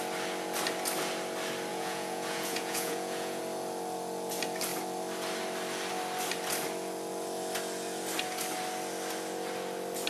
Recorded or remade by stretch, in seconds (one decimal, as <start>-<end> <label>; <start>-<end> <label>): 0.0-1.7 recorded; 1.7-3.4 remade; 3.4-10.1 recorded